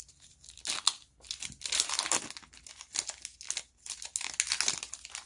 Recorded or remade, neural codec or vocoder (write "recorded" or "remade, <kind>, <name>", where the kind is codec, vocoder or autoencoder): recorded